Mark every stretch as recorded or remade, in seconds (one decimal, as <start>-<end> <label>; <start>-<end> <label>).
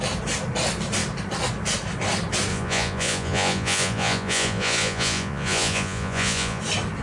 0.0-2.5 recorded; 2.5-6.6 remade; 6.6-7.0 recorded